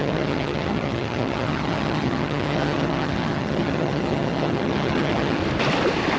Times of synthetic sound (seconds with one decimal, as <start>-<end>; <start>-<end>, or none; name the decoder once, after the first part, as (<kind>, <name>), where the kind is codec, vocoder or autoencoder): 0.0-5.4 (vocoder, HiFi-GAN)